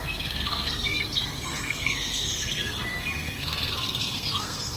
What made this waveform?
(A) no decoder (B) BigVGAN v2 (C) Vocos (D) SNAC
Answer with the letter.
D